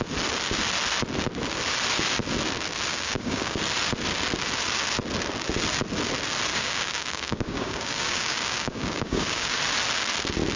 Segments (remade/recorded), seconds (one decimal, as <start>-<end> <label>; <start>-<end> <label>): 0.0-2.9 recorded; 2.9-3.6 remade; 3.6-6.5 recorded; 6.5-9.6 remade; 9.6-10.6 recorded